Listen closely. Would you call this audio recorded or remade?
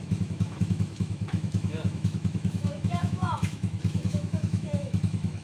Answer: remade